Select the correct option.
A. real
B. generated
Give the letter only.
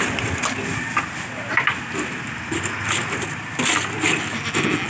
A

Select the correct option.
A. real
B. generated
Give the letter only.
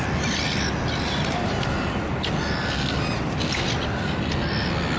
A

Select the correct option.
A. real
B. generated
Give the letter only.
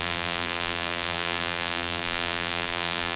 B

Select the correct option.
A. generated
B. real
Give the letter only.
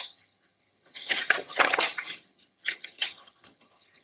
A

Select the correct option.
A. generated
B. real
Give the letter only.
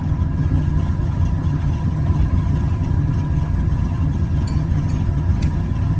A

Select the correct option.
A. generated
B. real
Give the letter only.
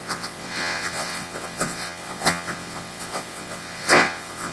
A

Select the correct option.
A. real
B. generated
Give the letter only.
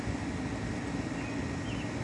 A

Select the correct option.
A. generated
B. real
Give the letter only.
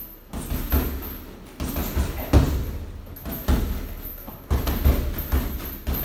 B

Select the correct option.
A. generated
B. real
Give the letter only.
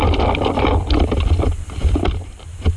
B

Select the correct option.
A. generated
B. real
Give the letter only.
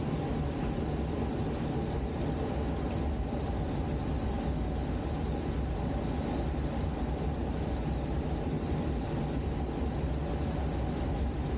B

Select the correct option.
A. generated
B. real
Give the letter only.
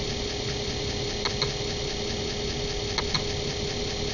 B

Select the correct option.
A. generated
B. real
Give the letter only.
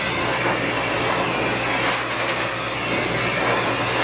B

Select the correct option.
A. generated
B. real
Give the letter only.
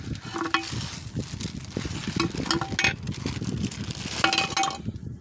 B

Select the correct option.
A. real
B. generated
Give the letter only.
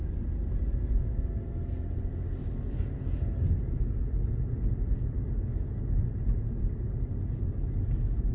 A